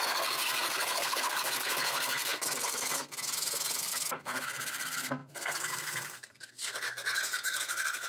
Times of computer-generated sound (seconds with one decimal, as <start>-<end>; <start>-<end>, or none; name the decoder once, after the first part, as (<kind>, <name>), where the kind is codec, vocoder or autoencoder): 0.0-8.1 (codec, SNAC)